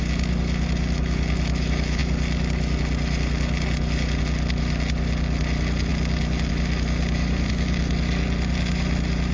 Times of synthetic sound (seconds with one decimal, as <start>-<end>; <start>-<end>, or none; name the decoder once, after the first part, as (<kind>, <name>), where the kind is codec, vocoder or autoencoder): none